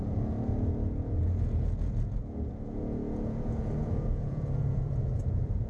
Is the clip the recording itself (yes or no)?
no